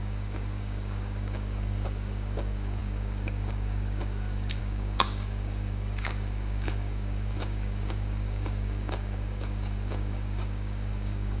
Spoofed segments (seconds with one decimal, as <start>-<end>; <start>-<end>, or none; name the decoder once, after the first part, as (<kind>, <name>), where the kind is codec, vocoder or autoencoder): 0.0-11.4 (codec, DAC)